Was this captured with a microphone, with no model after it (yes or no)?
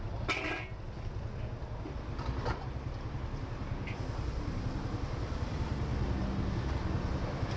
yes